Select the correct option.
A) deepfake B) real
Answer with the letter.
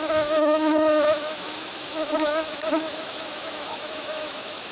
A